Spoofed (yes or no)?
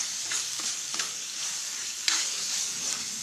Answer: yes